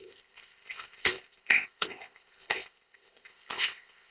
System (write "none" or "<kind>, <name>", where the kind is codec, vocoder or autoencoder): codec, ZipCodec